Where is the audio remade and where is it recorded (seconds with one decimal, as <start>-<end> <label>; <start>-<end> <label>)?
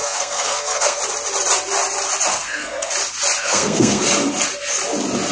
0.0-1.0 remade; 1.0-2.3 recorded; 2.3-2.9 remade; 2.9-3.4 recorded; 3.4-4.0 remade; 4.0-5.3 recorded